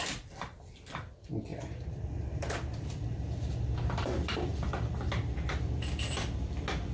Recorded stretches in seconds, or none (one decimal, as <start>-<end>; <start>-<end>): none